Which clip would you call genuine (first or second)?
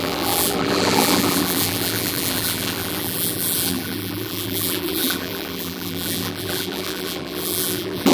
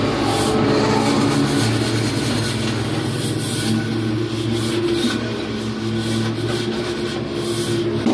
second